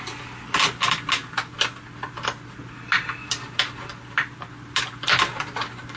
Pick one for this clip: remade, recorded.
recorded